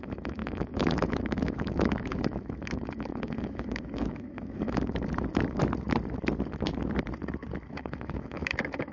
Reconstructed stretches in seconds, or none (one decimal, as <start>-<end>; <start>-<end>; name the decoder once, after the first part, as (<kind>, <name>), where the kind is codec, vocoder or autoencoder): 0.0-5.6 (autoencoder, DAC-VAE); 7.7-8.9